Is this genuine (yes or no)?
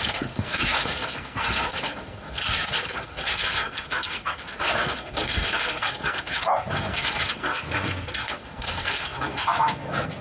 no